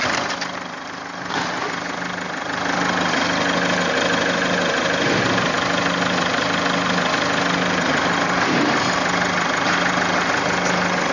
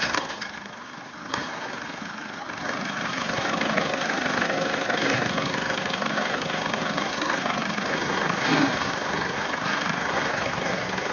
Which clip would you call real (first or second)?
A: first